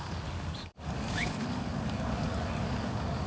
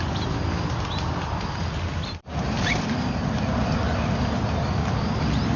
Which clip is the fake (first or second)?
first